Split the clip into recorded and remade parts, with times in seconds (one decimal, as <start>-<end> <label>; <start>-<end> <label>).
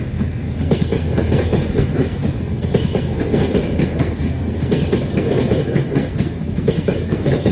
0.0-7.5 remade